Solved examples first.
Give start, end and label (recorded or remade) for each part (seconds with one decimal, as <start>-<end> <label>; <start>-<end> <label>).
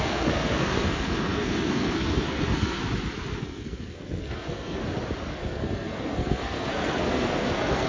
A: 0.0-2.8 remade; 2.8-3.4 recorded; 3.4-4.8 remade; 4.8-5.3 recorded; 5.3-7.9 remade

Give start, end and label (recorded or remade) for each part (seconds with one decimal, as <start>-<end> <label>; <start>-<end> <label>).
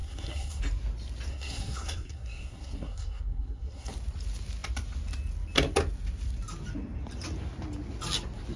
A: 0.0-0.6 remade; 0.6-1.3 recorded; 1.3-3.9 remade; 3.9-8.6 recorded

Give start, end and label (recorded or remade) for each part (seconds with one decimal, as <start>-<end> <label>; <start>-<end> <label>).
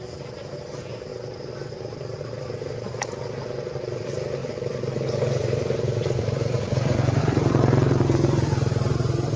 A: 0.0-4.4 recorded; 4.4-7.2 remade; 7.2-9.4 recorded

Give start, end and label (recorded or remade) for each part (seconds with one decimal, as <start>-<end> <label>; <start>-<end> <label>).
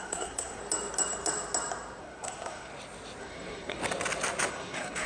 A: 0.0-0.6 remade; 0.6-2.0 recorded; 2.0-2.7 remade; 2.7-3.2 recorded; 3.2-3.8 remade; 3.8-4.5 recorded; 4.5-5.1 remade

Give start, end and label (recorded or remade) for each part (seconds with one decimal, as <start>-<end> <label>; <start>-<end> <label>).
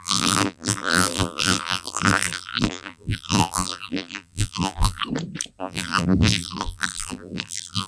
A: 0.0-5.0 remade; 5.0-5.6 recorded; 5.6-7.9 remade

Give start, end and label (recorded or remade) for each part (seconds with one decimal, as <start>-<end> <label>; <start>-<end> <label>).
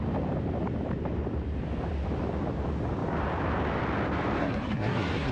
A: 0.0-4.4 recorded; 4.4-5.3 remade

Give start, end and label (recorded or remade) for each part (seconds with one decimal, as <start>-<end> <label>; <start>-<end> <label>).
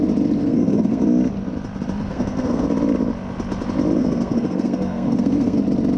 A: 0.0-0.4 recorded; 0.4-1.0 remade; 1.0-2.1 recorded; 2.1-2.7 remade; 2.7-4.0 recorded; 4.0-5.6 remade; 5.6-6.0 recorded